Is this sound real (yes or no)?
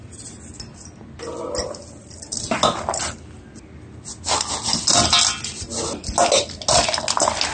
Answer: yes